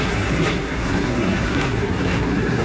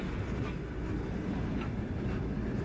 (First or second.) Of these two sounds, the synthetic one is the first